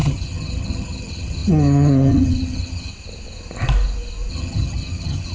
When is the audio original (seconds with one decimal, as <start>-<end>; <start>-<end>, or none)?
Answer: 2.9-4.3